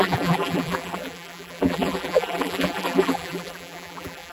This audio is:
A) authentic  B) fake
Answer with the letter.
B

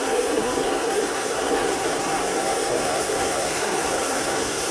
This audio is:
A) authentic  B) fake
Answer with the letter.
B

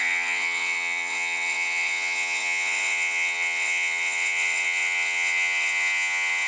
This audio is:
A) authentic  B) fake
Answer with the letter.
B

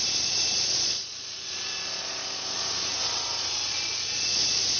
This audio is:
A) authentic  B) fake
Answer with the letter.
B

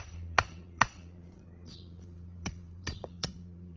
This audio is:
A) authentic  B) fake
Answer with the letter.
B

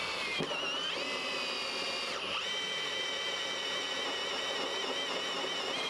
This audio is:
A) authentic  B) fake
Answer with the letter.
A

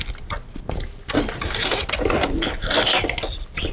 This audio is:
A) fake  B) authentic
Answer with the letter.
B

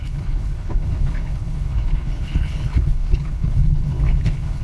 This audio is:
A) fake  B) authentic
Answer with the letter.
A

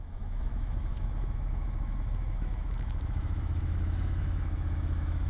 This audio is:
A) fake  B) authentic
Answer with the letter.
A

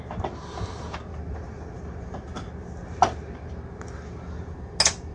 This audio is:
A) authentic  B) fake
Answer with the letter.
A